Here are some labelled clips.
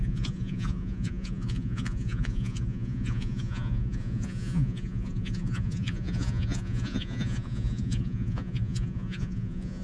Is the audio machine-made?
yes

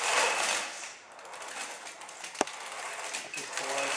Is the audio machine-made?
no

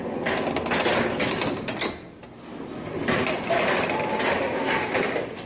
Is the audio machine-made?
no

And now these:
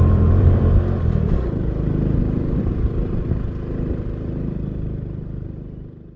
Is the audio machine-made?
yes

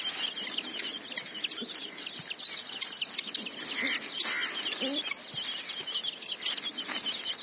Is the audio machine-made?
no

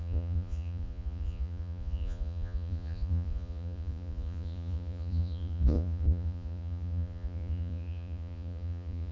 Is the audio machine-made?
yes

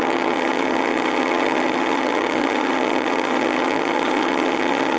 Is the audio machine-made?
yes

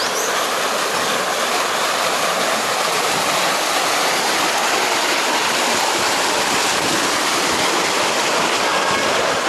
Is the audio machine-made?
yes